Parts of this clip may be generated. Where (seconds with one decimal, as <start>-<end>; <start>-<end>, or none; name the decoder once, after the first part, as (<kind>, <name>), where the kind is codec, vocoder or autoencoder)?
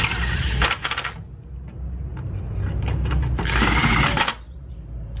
none